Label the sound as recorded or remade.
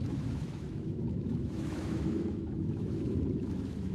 remade